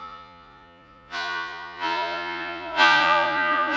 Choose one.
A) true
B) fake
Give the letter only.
B